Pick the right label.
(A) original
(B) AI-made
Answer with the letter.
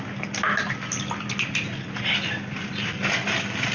A